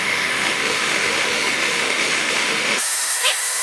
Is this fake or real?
fake